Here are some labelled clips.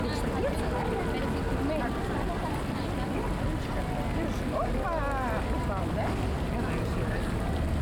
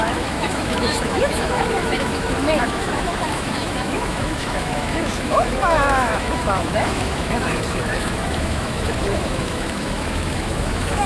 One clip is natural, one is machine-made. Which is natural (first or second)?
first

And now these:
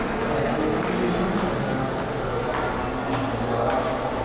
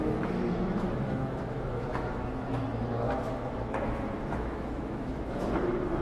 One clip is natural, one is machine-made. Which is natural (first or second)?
first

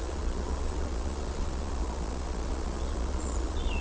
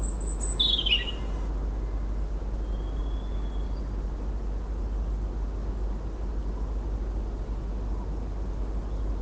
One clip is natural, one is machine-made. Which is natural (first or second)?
second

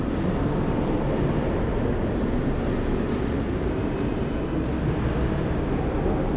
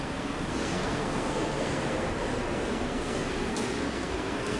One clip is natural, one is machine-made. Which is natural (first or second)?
first